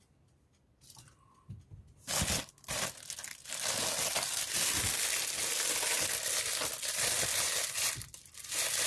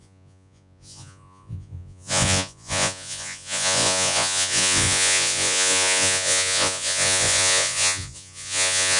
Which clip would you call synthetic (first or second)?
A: second